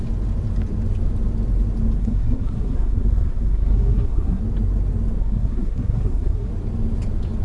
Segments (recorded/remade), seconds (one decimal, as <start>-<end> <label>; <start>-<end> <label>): 0.0-2.0 recorded; 2.0-4.4 remade; 4.4-5.2 recorded; 5.2-6.5 remade; 6.5-7.4 recorded

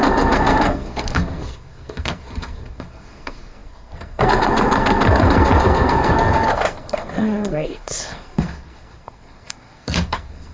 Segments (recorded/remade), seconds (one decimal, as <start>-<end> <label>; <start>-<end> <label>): 0.0-10.5 remade

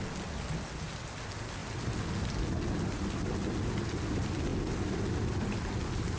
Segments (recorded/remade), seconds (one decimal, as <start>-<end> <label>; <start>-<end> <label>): 0.0-6.2 recorded

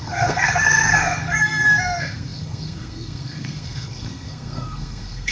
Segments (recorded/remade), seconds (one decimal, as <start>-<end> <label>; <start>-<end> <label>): 0.0-5.3 remade

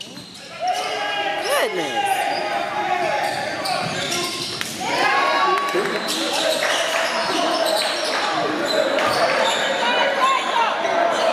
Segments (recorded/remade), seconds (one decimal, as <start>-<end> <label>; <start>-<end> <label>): 0.0-7.2 recorded; 7.2-9.6 remade; 9.6-11.3 recorded

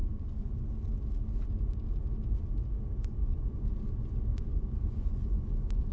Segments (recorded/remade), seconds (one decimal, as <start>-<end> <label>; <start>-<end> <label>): 0.0-0.6 remade; 0.6-3.0 recorded; 3.0-3.7 remade; 3.7-4.3 recorded; 4.3-5.9 remade